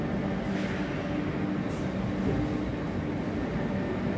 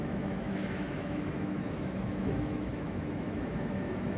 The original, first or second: first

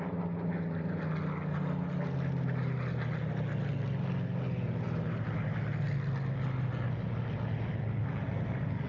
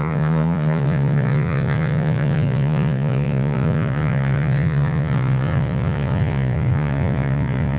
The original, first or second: first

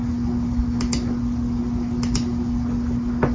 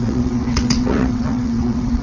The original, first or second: first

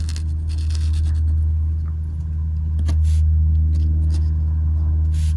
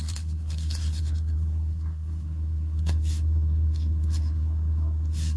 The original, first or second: first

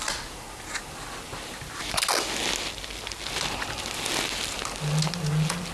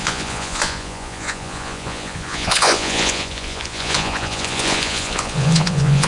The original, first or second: first